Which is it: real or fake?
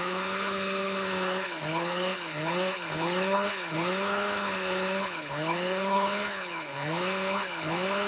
fake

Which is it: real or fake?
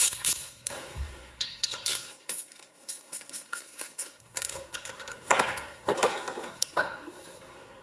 fake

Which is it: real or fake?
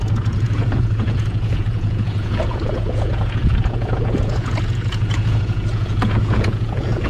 fake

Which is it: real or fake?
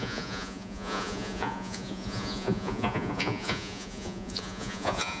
fake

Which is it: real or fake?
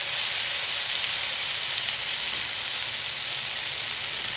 real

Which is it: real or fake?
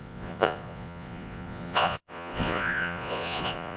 fake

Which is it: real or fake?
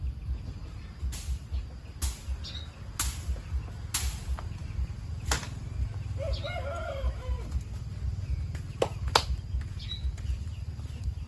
real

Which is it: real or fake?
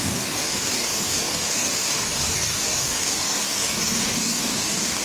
fake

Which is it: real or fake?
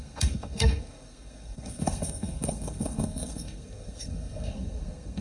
fake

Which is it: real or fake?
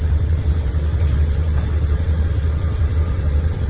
fake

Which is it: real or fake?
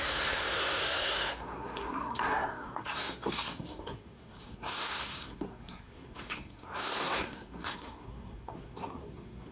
fake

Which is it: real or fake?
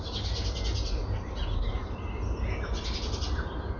real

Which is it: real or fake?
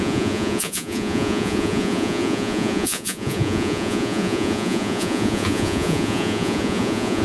fake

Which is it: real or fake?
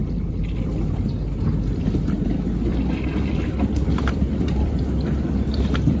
fake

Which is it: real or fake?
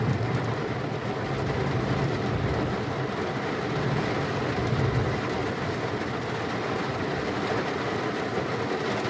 real